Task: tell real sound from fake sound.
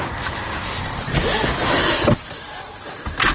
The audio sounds real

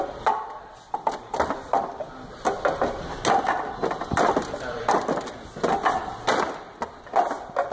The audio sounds real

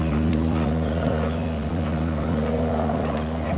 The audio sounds fake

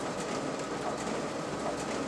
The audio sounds real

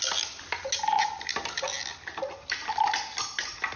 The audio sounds real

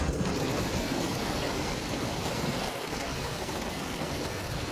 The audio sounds fake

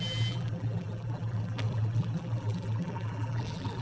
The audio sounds fake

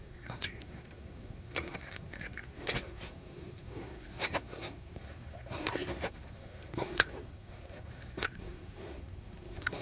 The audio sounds fake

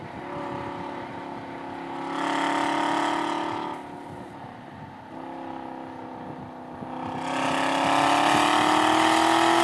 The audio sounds real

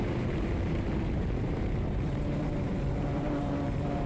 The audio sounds fake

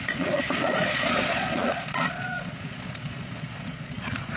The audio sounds fake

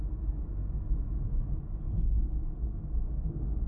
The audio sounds real